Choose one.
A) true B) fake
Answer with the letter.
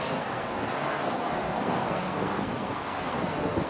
B